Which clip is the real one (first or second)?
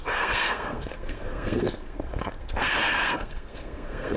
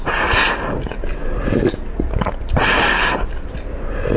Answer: second